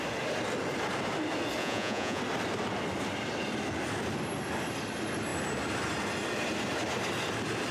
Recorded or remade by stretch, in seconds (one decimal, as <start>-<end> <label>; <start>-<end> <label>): 0.0-1.6 recorded; 1.6-2.2 remade; 2.2-7.7 recorded